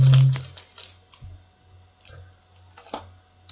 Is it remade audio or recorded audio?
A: recorded